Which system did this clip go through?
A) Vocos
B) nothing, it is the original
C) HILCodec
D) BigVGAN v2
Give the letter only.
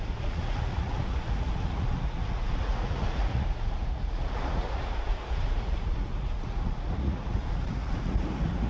A